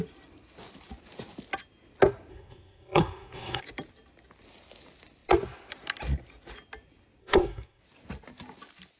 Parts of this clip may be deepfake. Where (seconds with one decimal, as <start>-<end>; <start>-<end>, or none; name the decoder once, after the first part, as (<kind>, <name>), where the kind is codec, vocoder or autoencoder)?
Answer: 2.3-3.6 (codec, SNAC); 7.2-7.8